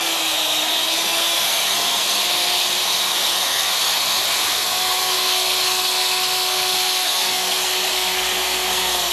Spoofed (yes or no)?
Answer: yes